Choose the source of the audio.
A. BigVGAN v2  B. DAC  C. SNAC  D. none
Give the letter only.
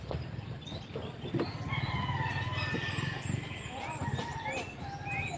D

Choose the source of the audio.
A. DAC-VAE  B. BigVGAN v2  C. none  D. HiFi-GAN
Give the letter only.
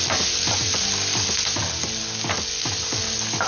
C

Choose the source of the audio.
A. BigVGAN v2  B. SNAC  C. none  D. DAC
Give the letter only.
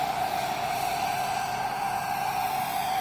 C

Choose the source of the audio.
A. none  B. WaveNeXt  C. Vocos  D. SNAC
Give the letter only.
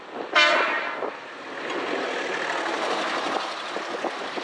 A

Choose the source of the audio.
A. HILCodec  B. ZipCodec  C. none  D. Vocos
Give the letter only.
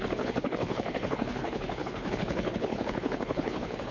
A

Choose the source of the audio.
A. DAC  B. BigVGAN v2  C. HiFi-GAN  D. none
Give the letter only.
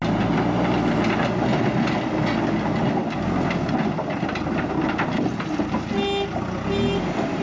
D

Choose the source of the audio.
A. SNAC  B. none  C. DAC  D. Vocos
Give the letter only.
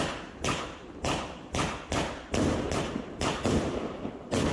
B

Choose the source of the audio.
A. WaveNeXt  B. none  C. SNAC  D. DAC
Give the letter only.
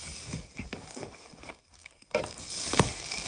D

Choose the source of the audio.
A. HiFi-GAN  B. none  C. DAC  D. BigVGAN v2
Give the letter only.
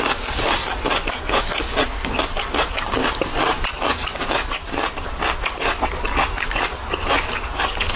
B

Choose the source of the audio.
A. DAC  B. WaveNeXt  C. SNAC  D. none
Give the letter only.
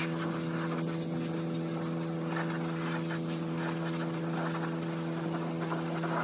D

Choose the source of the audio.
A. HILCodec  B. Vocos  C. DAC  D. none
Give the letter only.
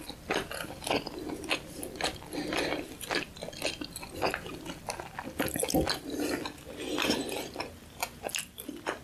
D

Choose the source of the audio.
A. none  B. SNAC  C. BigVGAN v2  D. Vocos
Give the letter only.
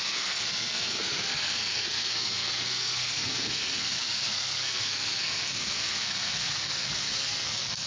B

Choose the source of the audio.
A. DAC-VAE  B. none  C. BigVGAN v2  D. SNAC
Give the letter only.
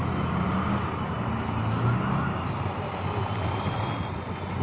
B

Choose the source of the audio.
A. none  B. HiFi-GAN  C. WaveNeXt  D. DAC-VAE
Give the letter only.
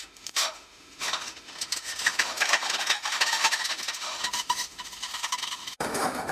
D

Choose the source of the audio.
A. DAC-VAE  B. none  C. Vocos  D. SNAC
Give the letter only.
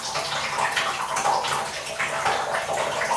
B